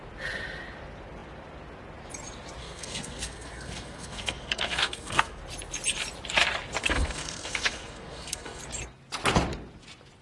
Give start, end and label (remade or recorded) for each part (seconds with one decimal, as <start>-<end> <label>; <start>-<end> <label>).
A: 0.0-2.6 recorded; 2.6-5.4 remade; 5.4-6.8 recorded; 6.8-8.6 remade; 8.6-10.2 recorded